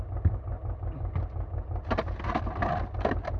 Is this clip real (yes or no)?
yes